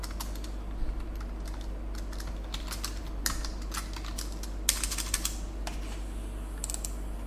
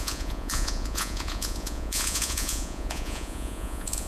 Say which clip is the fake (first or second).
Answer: second